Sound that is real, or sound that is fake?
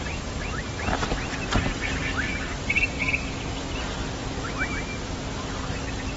real